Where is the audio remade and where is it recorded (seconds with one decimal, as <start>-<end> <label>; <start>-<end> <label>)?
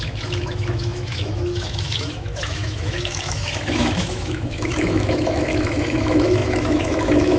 0.0-7.4 remade